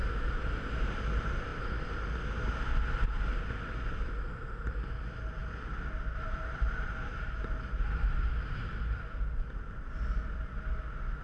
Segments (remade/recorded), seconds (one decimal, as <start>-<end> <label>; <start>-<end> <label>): 0.0-11.2 recorded